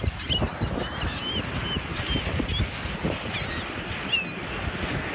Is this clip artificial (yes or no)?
no